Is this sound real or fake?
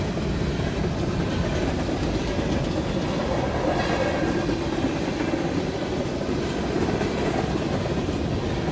real